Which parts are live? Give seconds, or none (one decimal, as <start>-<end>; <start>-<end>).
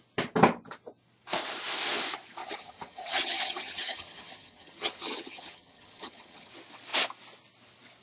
0.0-2.4; 6.5-8.0